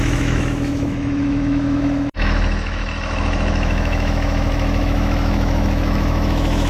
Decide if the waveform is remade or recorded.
remade